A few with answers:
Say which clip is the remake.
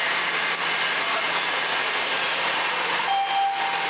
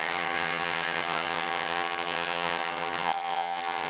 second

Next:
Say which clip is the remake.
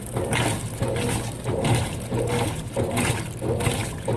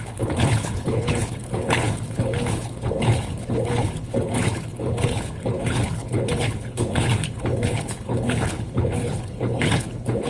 second